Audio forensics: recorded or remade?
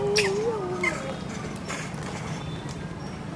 recorded